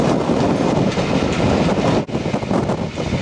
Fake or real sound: real